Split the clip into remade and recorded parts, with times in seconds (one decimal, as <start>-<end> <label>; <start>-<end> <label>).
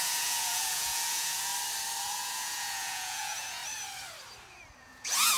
0.0-1.5 remade; 1.5-2.0 recorded; 2.0-3.6 remade; 3.6-4.8 recorded; 4.8-5.4 remade